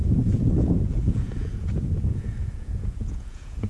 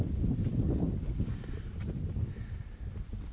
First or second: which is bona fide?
second